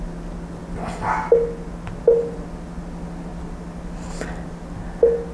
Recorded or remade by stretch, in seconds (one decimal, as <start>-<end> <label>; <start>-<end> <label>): 0.0-5.3 recorded